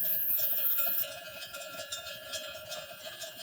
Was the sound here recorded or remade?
remade